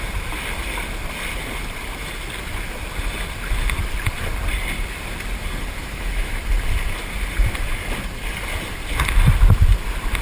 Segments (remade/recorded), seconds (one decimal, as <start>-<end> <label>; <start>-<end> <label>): 0.0-5.8 recorded; 5.8-6.4 remade; 6.4-10.2 recorded